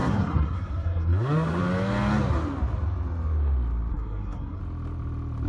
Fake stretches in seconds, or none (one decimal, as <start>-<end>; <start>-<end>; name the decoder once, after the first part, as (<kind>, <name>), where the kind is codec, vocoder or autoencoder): 0.0-1.6 (codec, SNAC); 3.9-4.6